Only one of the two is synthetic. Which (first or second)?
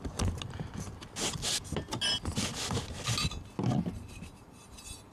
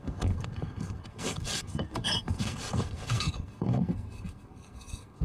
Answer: second